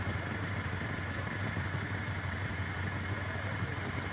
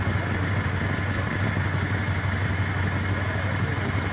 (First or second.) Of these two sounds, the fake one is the first